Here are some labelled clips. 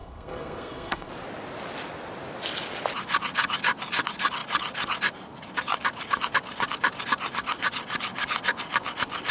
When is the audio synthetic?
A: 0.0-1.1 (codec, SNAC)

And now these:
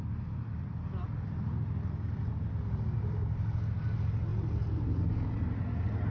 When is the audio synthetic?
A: none

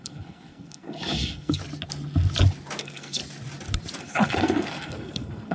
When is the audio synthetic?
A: 0.0-1.6 (codec, SNAC); 2.8-3.2; 4.0-5.5

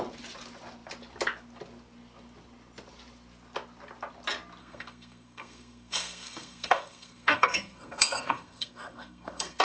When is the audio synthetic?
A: 4.6-9.6 (codec, SNAC)

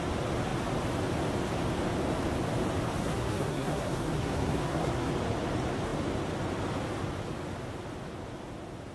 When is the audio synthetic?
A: 3.0-5.1 (codec, SNAC)

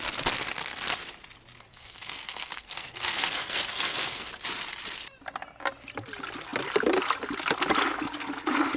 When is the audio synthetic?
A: 1.7-4.3 (codec, SNAC)